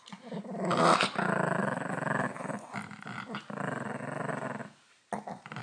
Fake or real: real